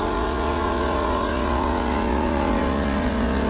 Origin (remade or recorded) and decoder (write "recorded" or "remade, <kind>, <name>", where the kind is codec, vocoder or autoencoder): remade, vocoder, Vocos